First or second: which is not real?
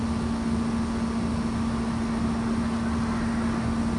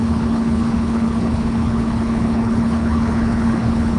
second